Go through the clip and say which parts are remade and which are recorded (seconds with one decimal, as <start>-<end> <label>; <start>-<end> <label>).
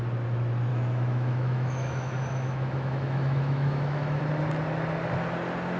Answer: 0.0-0.7 recorded; 0.7-4.2 remade; 4.2-5.8 recorded